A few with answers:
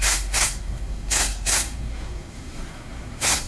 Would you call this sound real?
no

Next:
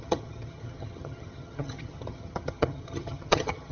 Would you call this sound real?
no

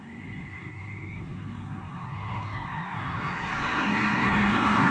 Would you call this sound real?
no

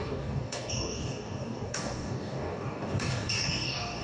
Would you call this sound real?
no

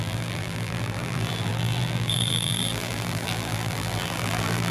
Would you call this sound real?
no